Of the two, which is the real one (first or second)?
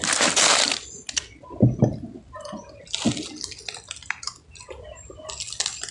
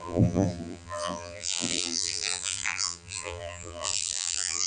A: first